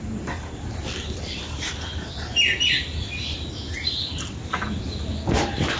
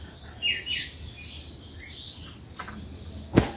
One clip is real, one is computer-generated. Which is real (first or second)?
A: second